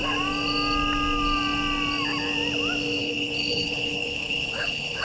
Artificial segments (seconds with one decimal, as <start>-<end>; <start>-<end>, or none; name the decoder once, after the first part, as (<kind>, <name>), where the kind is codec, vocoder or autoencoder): 3.0-5.0 (codec, HILCodec)